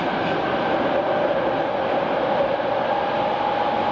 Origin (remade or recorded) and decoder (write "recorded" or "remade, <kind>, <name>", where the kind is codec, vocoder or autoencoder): recorded